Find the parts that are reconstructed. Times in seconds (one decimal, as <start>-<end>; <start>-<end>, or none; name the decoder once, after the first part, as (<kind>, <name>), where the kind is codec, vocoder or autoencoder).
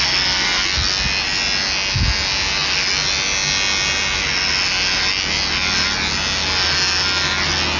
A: none